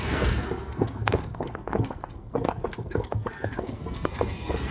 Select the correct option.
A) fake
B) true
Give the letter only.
A